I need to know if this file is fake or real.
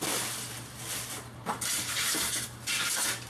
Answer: real